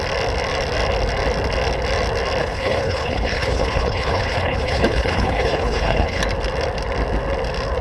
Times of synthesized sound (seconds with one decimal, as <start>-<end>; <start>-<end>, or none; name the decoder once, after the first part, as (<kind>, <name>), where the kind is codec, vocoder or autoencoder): 2.4-6.2 (codec, HILCodec)